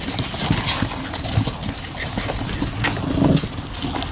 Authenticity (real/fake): real